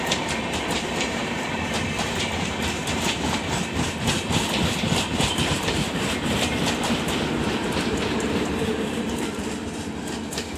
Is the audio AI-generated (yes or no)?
yes